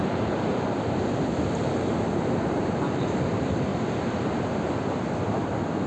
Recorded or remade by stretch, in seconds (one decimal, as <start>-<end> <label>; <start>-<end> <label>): 0.0-3.7 remade; 3.7-5.9 recorded